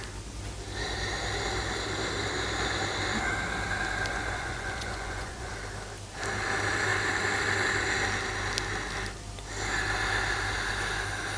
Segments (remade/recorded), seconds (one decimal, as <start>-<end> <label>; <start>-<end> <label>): 0.0-4.1 recorded; 4.1-5.5 remade; 5.5-11.4 recorded